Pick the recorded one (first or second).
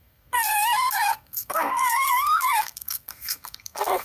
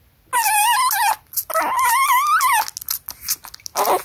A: second